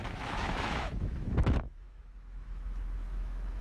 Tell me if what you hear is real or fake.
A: fake